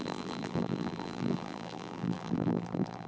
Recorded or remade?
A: remade